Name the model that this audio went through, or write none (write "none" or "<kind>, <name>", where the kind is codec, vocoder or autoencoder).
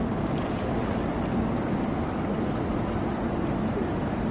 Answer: none